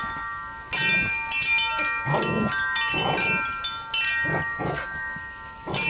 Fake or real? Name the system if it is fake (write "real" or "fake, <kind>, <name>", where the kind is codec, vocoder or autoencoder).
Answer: real